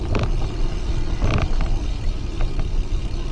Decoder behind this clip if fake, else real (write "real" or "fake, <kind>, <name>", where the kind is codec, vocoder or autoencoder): real